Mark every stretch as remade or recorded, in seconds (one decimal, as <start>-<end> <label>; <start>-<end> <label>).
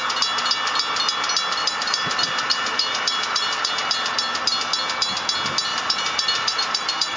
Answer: 0.0-1.6 recorded; 1.6-3.7 remade; 3.7-5.7 recorded; 5.7-7.2 remade